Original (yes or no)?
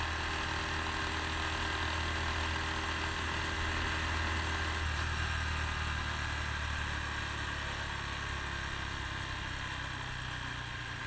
yes